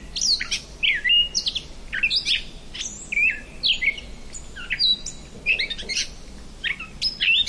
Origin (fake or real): real